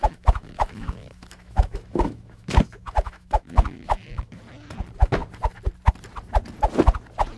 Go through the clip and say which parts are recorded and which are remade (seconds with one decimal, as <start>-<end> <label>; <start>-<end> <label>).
0.0-4.4 remade; 4.4-7.4 recorded